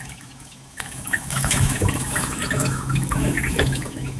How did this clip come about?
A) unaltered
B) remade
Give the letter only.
B